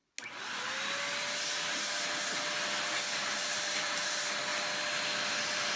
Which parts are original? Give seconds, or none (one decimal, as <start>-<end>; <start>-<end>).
0.0-3.2; 4.5-5.3